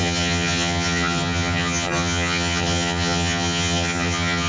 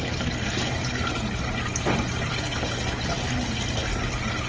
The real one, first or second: second